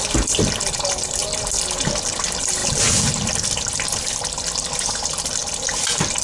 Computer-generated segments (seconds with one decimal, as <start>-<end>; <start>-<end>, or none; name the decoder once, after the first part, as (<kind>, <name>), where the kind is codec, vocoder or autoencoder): none